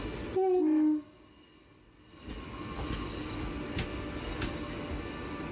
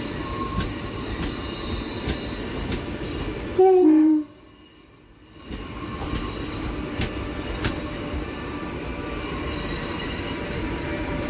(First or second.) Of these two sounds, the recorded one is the first